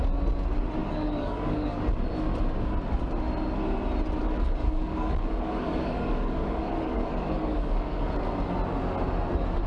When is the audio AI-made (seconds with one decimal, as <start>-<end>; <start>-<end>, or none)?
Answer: 0.8-1.8; 4.2-8.0